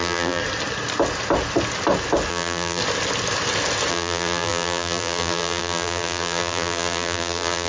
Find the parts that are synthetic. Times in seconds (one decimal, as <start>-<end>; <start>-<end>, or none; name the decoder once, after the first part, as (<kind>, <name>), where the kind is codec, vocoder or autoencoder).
0.0-0.4 (vocoder, BigVGAN v2); 2.3-2.8; 3.9-7.7